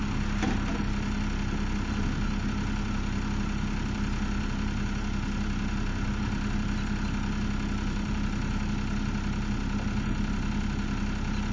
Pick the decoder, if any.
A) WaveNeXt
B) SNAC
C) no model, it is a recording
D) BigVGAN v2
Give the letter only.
C